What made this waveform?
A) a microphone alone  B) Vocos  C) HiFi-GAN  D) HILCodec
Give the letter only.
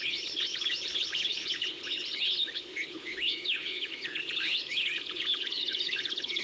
D